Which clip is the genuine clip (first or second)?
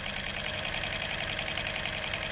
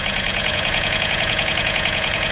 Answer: first